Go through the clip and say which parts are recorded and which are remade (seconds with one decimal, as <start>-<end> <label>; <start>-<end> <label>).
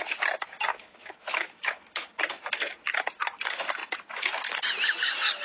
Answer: 0.0-0.7 recorded; 0.7-2.1 remade; 2.1-5.4 recorded